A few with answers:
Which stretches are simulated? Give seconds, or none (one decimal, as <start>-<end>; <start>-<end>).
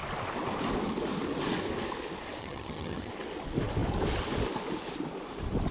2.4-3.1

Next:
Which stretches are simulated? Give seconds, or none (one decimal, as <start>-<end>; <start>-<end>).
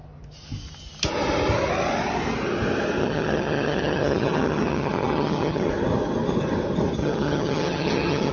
3.0-5.7; 7.0-8.3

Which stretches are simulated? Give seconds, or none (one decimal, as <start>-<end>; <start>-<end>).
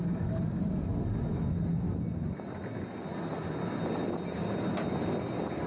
none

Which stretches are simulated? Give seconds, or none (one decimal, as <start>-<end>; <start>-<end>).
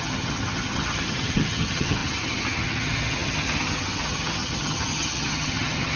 0.0-6.0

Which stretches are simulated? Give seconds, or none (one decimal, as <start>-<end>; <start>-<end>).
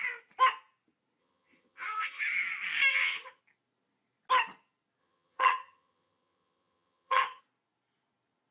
1.2-2.2; 2.9-3.4; 5.0-7.4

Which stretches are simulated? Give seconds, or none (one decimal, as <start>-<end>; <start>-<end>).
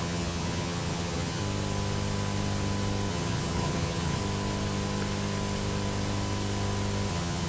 0.0-1.4; 3.1-4.2; 7.1-7.5